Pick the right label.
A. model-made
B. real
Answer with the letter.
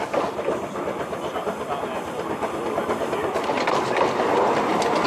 B